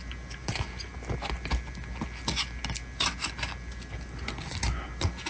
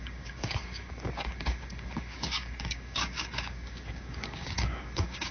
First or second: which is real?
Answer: first